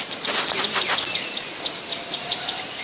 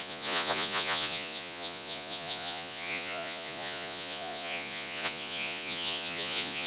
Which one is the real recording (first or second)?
first